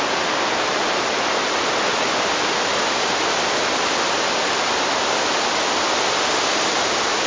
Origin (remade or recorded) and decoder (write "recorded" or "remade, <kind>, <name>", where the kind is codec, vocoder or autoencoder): recorded